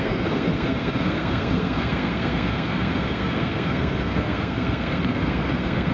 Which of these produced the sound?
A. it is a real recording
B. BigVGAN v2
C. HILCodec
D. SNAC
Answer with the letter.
D